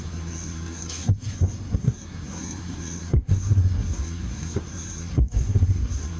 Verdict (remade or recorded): remade